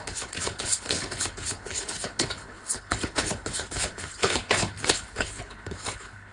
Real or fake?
fake